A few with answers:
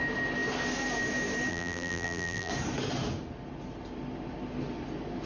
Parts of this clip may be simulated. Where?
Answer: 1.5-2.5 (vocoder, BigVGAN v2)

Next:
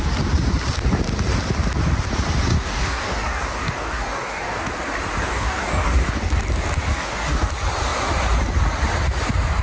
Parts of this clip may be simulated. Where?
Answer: 2.5-4.7 (codec, DAC); 5.2-6.3; 6.9-7.5

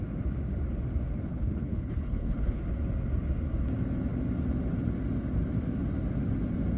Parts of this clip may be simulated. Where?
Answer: 1.3-2.6 (codec, HILCodec)

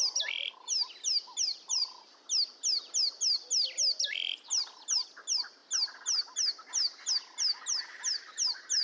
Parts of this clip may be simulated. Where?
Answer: none

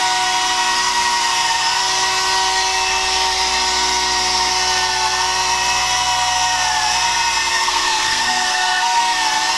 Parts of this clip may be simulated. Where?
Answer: 7.5-9.0 (codec, SNAC)

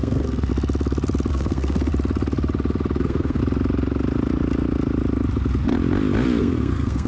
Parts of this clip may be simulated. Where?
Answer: 0.0-0.5 (codec, SNAC); 1.3-1.9; 3.0-3.4; 6.4-7.1

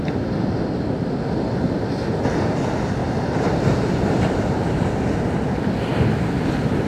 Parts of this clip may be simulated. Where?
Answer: 3.0-4.9 (vocoder, BigVGAN v2)

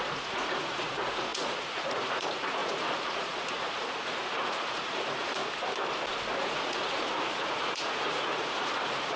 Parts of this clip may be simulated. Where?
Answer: 0.0-5.4 (vocoder, Vocos); 6.4-9.2